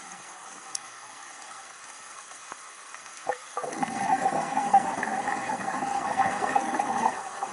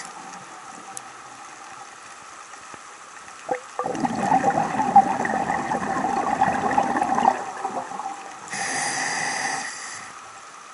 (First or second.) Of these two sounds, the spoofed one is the first